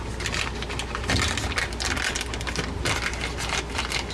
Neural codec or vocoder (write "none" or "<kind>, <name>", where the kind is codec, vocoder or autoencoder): none